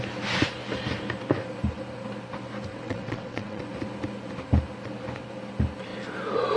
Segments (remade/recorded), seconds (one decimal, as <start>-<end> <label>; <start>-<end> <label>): 0.0-2.7 recorded; 2.7-3.6 remade; 3.6-6.6 recorded